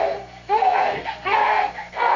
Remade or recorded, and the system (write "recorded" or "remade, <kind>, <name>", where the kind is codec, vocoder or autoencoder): remade, codec, SNAC